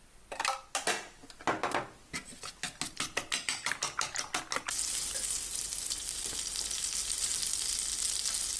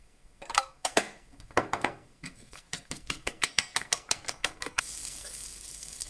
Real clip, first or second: first